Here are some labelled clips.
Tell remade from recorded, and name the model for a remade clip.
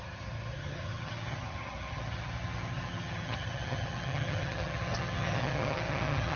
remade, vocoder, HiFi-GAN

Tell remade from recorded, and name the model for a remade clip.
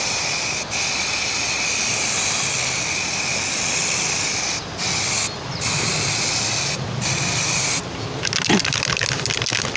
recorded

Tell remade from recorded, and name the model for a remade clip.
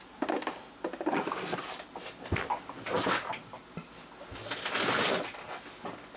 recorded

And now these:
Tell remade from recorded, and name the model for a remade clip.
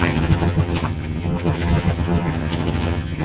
remade, vocoder, HiFi-GAN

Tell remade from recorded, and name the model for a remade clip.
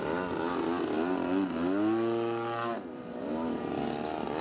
recorded